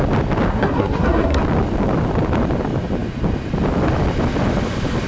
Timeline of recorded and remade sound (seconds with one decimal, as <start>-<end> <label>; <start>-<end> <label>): 0.0-0.5 recorded; 0.5-1.4 remade; 1.4-5.1 recorded